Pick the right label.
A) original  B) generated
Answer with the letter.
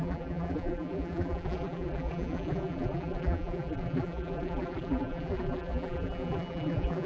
B